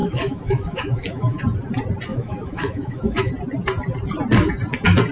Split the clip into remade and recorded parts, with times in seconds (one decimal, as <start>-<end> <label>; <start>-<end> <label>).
0.0-1.4 remade; 1.4-2.1 recorded; 2.1-3.3 remade; 3.3-5.1 recorded